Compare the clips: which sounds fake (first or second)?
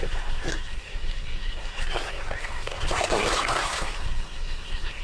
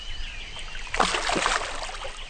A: first